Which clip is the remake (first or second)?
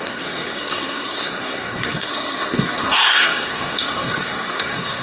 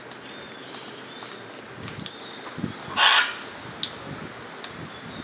first